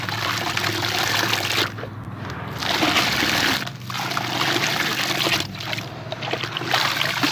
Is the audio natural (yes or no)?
yes